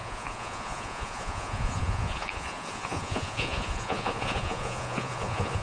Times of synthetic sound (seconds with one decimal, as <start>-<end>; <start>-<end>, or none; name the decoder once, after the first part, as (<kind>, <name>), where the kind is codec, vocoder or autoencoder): 0.0-5.6 (vocoder, Vocos)